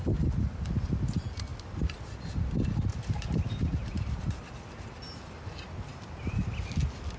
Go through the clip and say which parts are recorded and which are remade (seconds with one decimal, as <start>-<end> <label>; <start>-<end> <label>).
0.0-2.9 recorded; 2.9-4.2 remade; 4.2-5.9 recorded; 5.9-6.4 remade; 6.4-7.2 recorded